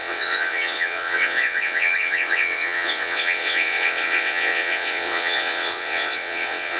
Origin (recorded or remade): remade